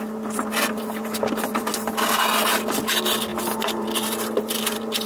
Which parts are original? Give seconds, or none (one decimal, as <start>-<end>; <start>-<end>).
0.0-5.1